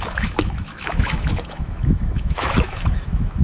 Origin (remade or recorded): remade